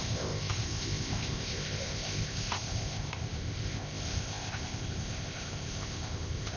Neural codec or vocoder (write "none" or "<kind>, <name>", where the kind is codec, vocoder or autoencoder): codec, ZipCodec